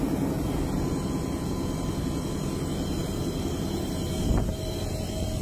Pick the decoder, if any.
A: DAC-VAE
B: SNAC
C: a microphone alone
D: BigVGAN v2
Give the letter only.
C